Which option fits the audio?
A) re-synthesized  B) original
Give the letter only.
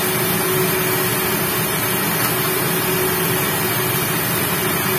B